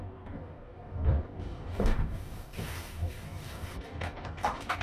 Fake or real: fake